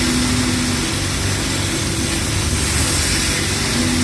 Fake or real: real